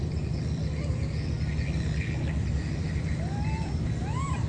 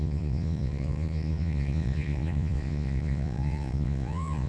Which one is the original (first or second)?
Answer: first